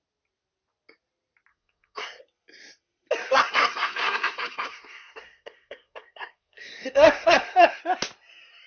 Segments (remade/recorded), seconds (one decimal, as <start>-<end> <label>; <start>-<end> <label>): 0.0-1.5 recorded; 1.5-2.2 remade; 2.2-3.2 recorded; 3.2-7.8 remade; 7.8-8.7 recorded